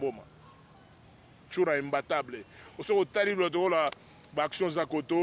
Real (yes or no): yes